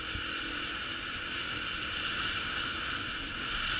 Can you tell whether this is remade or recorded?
recorded